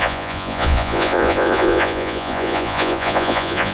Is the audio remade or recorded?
remade